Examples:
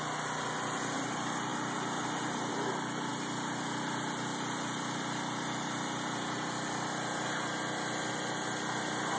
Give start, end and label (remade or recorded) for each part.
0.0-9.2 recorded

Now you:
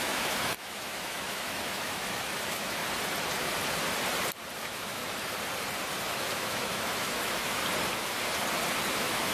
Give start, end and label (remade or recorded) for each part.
0.0-2.8 remade; 2.8-4.6 recorded; 4.6-5.0 remade; 5.0-6.1 recorded; 6.1-7.6 remade; 7.6-8.9 recorded; 8.9-9.3 remade

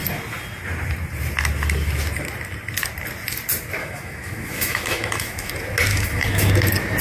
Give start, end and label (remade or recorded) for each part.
0.0-3.8 recorded; 3.8-5.5 remade; 5.5-5.9 recorded; 5.9-6.5 remade; 6.5-7.0 recorded

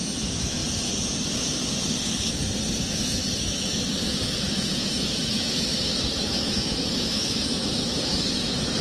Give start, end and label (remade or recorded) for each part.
0.0-0.6 remade; 0.6-2.8 recorded; 2.8-8.8 remade

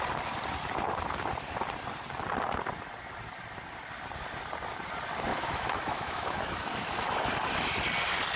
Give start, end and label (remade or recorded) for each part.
0.0-5.3 recorded; 5.3-7.3 remade; 7.3-8.4 recorded

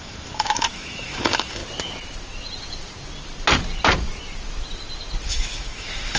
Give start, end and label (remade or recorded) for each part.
0.0-1.6 remade; 1.6-5.3 recorded; 5.3-6.2 remade

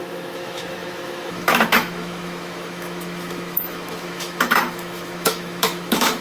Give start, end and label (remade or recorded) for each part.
0.0-6.2 remade